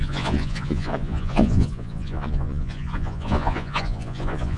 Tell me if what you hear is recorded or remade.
remade